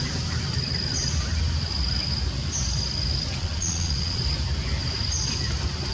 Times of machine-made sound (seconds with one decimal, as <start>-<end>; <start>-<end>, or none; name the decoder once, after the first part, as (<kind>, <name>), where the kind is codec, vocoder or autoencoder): 3.4-4.2 (vocoder, Vocos)